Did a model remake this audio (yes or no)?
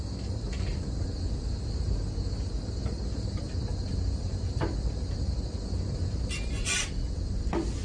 no